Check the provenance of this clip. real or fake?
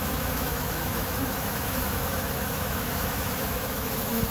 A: fake